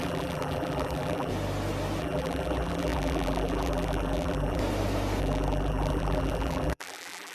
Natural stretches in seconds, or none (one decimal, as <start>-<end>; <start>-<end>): 1.3-2.0; 4.6-5.2